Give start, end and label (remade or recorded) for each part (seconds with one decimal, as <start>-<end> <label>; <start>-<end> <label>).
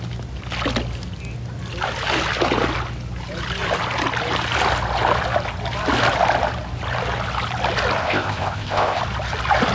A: 0.0-8.0 recorded; 8.0-9.0 remade; 9.0-9.7 recorded